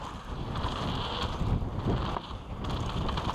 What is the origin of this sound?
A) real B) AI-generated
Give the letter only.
A